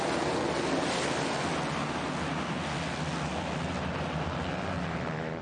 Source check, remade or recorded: recorded